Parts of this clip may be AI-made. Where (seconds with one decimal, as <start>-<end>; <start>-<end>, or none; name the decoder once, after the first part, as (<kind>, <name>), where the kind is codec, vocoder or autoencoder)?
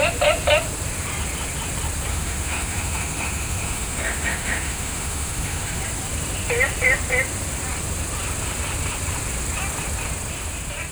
2.1-5.8 (autoencoder, DAC-VAE)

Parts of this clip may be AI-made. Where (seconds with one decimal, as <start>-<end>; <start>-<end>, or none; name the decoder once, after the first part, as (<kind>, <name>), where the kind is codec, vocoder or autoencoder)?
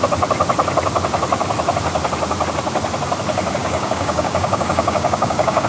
3.6-5.7 (codec, DAC)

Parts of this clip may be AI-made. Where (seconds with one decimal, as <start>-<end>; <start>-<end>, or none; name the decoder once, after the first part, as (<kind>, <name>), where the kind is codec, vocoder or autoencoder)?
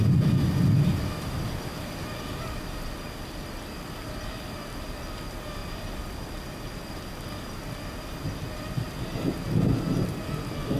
5.6-8.1 (vocoder, BigVGAN v2)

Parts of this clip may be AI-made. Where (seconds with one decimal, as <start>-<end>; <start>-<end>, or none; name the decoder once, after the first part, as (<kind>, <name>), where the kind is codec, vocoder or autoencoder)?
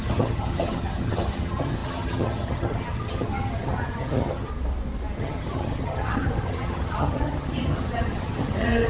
0.0-4.5 (vocoder, HiFi-GAN); 5.2-8.9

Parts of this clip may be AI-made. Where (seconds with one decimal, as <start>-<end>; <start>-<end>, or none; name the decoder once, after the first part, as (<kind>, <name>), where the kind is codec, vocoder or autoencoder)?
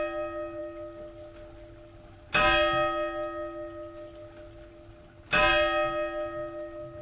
none